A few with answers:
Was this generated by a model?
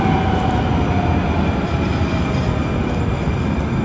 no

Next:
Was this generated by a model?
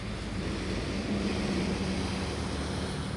no